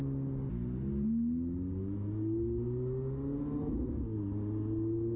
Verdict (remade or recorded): recorded